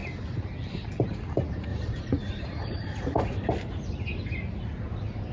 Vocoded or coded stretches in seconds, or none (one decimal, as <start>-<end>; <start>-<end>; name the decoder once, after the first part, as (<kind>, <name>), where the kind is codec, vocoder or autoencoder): 1.7-3.5 (vocoder, Vocos)